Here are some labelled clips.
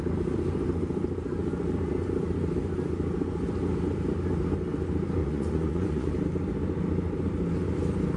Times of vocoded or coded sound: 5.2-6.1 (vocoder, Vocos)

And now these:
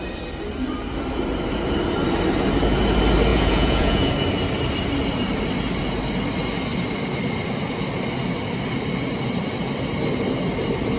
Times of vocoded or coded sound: 3.3-4.1 (vocoder, Vocos)

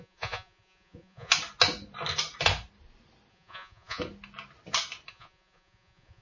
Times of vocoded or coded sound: 0.0-1.3 (vocoder, Vocos); 3.3-4.0; 5.1-6.2

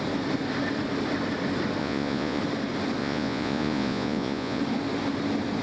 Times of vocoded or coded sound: 1.8-2.4 (vocoder, Vocos); 3.0-4.6

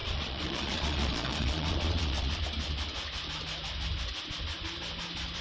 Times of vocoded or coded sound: 0.0-2.4 (vocoder, Vocos)

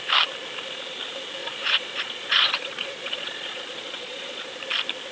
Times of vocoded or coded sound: 1.4-4.5 (vocoder, Vocos)